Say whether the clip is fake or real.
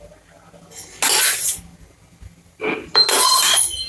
real